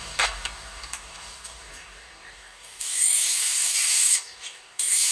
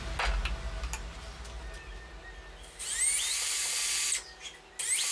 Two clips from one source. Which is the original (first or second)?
second